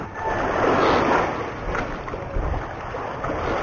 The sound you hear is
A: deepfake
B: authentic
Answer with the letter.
B